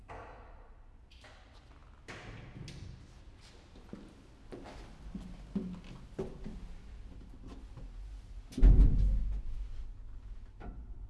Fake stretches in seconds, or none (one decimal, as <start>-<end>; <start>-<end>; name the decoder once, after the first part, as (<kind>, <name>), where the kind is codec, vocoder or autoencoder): none